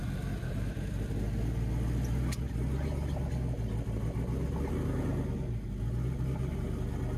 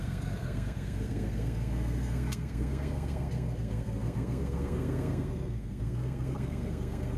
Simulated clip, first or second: second